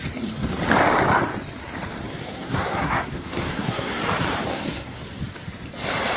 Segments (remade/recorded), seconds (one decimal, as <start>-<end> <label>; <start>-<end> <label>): 0.0-2.2 recorded; 2.2-4.0 remade; 4.0-4.5 recorded; 4.5-5.0 remade; 5.0-6.2 recorded